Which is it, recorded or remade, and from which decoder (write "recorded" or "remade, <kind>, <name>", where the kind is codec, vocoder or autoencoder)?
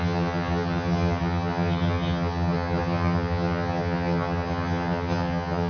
remade, vocoder, HiFi-GAN